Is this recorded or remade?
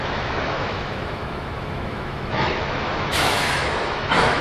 remade